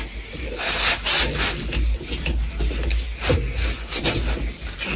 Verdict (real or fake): real